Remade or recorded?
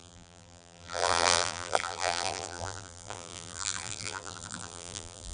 remade